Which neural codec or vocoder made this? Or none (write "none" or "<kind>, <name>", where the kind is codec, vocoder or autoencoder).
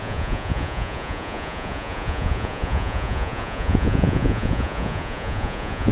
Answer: vocoder, Vocos